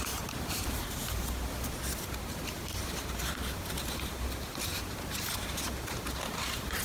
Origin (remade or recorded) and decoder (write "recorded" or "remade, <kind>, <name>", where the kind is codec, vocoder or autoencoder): recorded